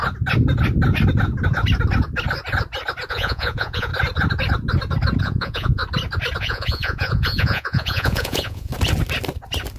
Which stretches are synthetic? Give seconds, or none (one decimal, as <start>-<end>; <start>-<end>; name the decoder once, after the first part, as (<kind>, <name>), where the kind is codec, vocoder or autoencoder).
3.1-3.9 (vocoder, Vocos); 5.2-5.8; 6.4-8.7